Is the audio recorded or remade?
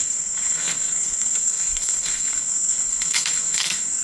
remade